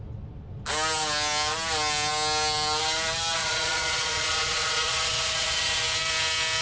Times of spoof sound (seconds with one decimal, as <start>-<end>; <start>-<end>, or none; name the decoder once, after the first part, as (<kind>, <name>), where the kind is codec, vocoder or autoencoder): 3.4-5.8 (vocoder, Vocos)